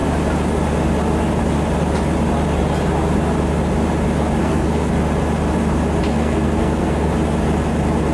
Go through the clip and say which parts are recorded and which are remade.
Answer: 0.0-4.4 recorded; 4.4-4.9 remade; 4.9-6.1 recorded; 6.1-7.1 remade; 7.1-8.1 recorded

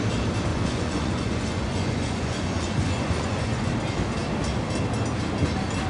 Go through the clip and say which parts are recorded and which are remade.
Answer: 0.0-0.5 recorded; 0.5-3.7 remade; 3.7-5.9 recorded

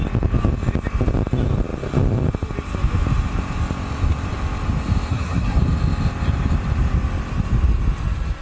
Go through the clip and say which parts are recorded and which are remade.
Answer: 0.0-5.1 recorded; 5.1-5.6 remade; 5.6-8.4 recorded

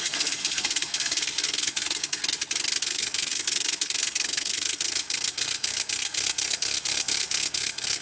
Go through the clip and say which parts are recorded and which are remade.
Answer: 0.0-2.2 remade; 2.2-2.8 recorded; 2.8-8.0 remade

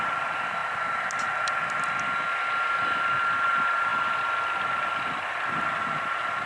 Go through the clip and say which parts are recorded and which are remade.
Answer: 0.0-6.5 recorded

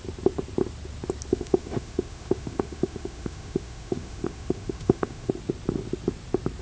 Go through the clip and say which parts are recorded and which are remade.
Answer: 0.0-1.3 recorded; 1.3-5.3 remade; 5.3-6.6 recorded